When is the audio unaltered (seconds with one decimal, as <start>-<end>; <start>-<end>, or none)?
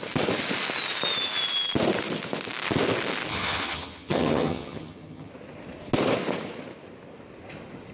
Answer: 0.0-3.3; 5.3-7.9